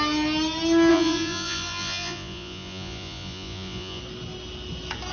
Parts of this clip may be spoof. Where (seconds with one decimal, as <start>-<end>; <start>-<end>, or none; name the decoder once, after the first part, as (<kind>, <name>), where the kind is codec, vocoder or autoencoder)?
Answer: 0.9-4.0 (vocoder, Vocos)